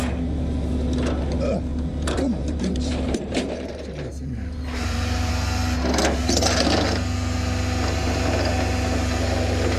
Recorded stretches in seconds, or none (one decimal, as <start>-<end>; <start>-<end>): 0.0-1.7; 5.3-9.8